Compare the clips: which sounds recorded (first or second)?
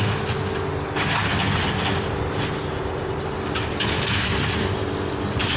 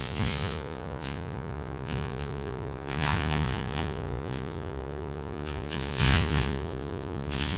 first